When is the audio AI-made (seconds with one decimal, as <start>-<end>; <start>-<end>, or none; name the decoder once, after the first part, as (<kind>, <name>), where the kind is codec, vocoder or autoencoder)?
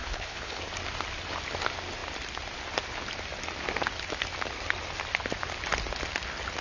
0.0-0.6 (codec, HILCodec)